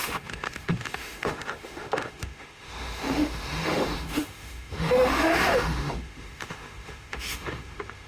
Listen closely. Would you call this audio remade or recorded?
remade